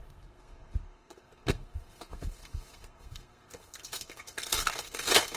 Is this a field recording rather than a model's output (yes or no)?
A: no